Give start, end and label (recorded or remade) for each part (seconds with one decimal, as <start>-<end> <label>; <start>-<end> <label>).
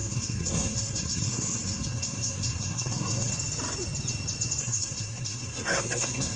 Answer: 0.0-3.3 remade; 3.3-4.6 recorded; 4.6-6.4 remade